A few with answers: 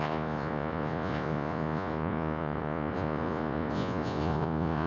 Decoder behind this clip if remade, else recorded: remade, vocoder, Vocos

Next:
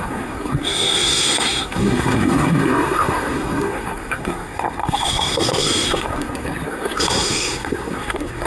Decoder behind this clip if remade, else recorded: remade, codec, SNAC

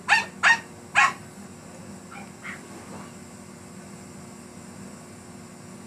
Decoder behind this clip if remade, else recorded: recorded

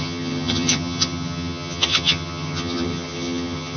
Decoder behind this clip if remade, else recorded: remade, vocoder, HiFi-GAN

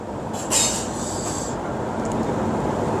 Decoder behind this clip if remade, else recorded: recorded